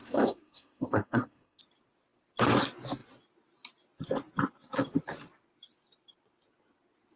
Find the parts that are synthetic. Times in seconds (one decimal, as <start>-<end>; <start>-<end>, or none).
0.0-1.6